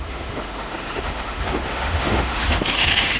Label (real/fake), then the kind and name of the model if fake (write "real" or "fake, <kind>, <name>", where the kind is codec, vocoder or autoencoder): fake, autoencoder, DAC-VAE